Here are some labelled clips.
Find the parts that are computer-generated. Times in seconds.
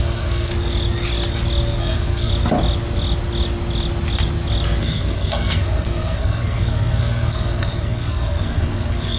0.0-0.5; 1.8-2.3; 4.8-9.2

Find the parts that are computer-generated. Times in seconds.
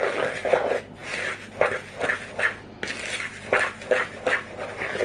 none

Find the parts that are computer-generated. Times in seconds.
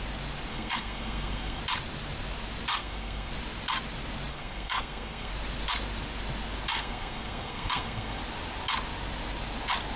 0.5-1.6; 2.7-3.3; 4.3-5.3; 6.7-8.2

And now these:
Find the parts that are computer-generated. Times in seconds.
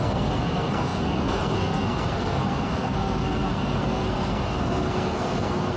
0.0-5.8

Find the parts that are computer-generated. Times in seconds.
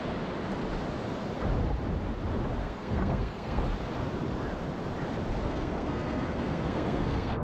2.6-3.6; 5.4-7.4